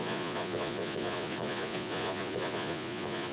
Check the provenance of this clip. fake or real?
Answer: fake